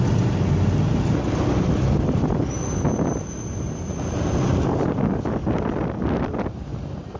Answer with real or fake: real